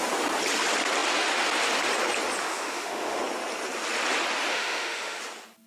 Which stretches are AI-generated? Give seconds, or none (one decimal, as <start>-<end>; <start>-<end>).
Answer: 2.4-3.2; 4.5-5.2